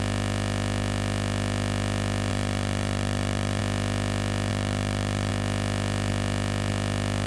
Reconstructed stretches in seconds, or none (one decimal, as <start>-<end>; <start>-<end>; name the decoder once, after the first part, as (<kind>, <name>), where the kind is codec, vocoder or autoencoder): 2.3-3.6 (vocoder, BigVGAN v2); 4.5-5.3